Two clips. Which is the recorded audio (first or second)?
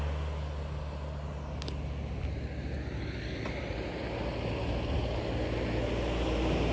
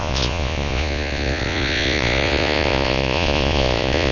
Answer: first